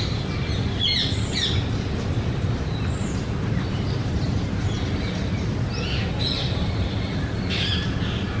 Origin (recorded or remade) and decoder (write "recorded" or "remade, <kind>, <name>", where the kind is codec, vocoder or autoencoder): recorded